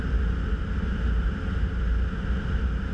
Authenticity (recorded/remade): recorded